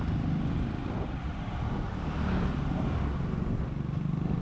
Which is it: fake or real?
real